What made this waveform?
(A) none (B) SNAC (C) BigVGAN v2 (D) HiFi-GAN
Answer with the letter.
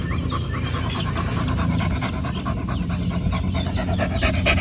A